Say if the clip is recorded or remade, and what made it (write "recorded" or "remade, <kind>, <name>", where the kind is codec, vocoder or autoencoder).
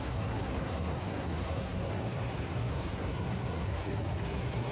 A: remade, codec, SNAC